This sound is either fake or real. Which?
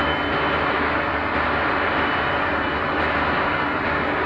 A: real